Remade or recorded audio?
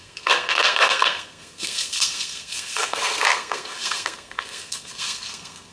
remade